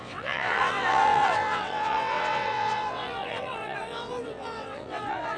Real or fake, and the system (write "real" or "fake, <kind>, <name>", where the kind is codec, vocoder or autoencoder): fake, vocoder, WaveNeXt